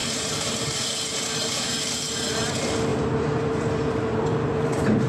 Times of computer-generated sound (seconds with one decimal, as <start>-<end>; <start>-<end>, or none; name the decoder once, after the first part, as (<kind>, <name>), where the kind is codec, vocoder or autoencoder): 0.0-5.1 (vocoder, BigVGAN v2)